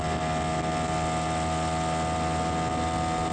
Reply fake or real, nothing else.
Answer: real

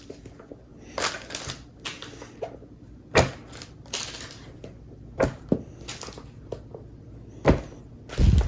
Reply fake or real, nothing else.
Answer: real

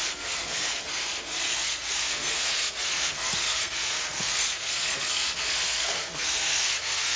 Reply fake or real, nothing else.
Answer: fake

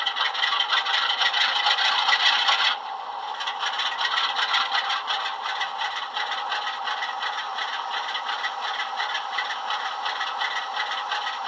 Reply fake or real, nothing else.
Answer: real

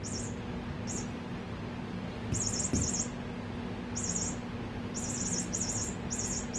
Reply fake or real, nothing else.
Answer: real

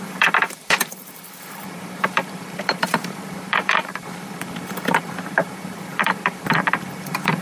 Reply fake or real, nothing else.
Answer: fake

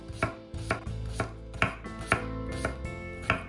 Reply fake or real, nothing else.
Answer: real